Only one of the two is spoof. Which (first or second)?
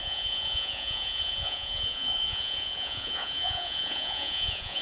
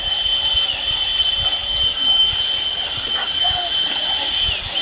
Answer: first